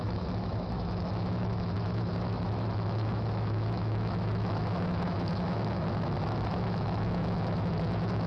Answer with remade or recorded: remade